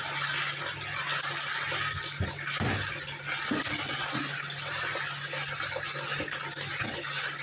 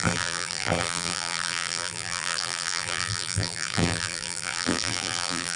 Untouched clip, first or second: first